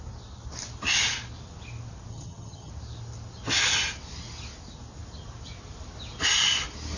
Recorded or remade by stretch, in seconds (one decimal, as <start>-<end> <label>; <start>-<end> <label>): 0.0-2.1 recorded; 2.1-2.7 remade; 2.7-7.0 recorded